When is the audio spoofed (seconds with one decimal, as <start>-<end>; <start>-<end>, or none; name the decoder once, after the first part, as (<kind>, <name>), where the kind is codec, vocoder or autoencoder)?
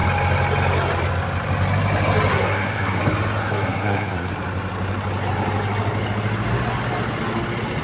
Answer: 2.3-3.0 (codec, SNAC); 3.4-4.3